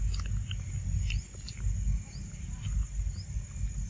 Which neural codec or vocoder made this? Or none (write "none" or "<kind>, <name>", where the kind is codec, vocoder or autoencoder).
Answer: none